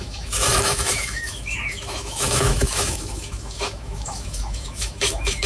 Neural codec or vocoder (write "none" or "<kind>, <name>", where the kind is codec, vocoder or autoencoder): autoencoder, DAC-VAE